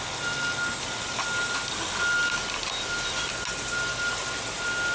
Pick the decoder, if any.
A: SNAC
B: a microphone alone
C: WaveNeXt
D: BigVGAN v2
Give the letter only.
B